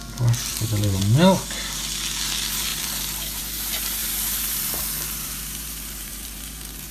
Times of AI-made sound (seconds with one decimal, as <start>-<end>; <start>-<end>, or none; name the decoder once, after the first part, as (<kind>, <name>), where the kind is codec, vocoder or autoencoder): 0.5-1.0 (vocoder, BigVGAN v2); 2.7-3.4; 4.0-6.9